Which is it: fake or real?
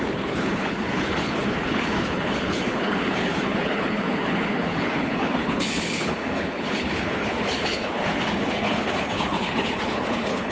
fake